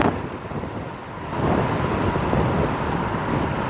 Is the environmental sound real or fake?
real